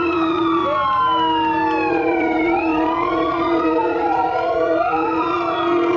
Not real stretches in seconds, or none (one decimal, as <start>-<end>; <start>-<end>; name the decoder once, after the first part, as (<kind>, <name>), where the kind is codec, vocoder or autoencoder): 0.0-0.6 (vocoder, Vocos); 1.9-6.0